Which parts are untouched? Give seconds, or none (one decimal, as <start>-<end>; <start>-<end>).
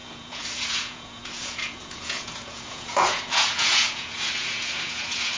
none